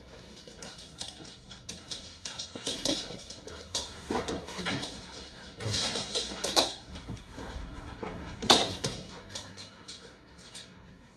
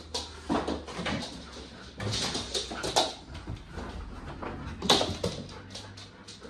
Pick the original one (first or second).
second